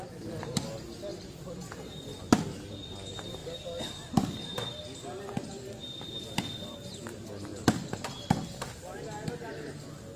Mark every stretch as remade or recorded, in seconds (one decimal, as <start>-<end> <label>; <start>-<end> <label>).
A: 0.0-10.2 recorded